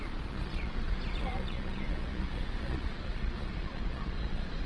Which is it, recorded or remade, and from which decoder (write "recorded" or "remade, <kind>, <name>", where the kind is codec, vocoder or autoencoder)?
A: remade, vocoder, Vocos